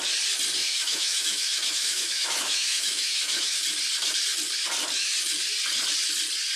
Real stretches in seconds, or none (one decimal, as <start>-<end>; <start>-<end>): 0.0-0.6; 3.6-6.6